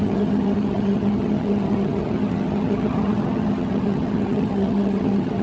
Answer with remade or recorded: remade